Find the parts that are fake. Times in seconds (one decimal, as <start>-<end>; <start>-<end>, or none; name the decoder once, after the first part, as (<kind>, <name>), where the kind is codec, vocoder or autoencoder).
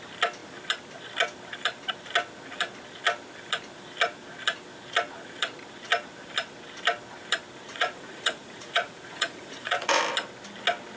7.7-10.0 (vocoder, Vocos)